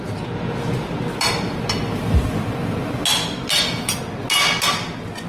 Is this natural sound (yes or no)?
yes